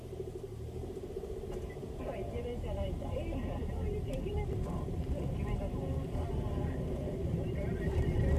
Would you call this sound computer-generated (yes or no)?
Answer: yes